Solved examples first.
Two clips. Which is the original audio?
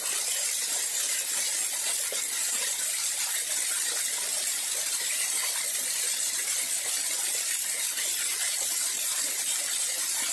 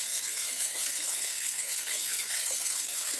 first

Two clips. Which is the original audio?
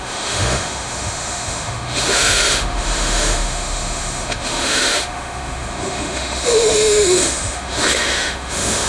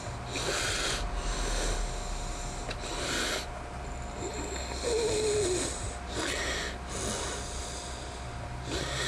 second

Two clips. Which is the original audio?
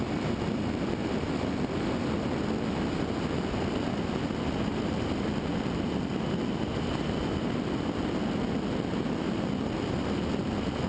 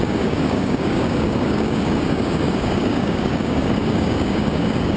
first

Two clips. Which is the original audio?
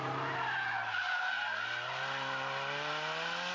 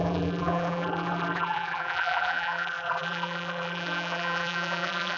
first